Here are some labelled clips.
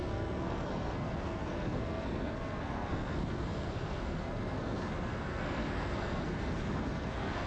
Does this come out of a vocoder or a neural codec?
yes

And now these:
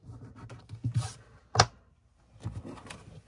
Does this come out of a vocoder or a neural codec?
no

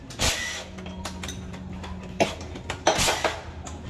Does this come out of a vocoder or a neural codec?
no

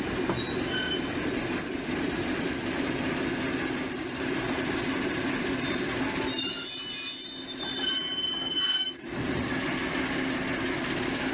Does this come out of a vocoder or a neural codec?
no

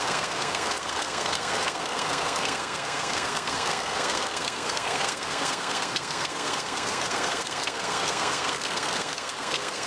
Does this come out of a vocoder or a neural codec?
yes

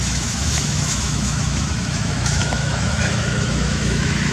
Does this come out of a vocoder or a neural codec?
yes